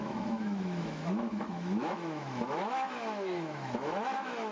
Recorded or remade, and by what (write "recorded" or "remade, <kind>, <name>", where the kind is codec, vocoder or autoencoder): remade, autoencoder, DAC-VAE